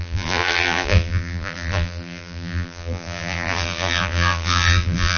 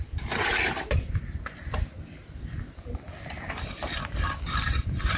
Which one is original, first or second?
second